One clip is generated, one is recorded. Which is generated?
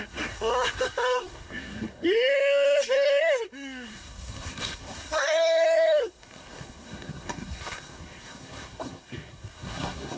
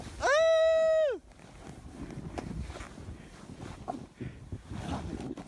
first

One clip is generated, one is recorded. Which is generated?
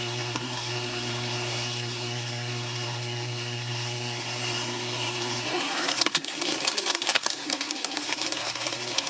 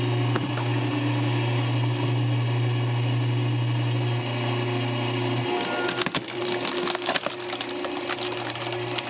first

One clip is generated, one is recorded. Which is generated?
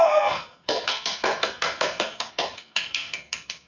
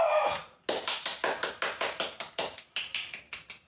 first